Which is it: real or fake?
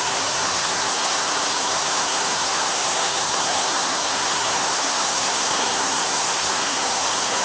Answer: fake